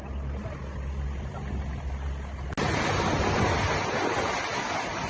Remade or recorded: recorded